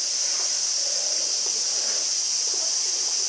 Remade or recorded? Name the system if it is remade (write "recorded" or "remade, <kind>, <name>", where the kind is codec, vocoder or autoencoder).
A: recorded